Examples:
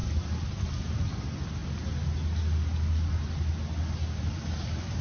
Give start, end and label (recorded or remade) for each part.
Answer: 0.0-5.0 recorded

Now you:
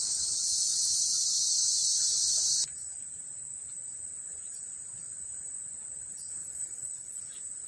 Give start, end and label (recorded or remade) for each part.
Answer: 0.0-6.4 recorded; 6.4-7.2 remade; 7.2-7.7 recorded

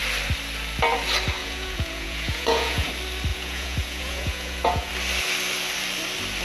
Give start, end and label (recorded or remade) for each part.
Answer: 0.0-1.4 recorded; 1.4-2.9 remade; 2.9-3.3 recorded; 3.3-4.9 remade; 4.9-6.4 recorded

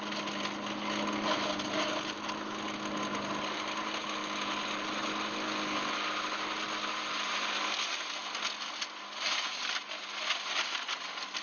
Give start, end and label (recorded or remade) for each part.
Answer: 0.0-11.4 recorded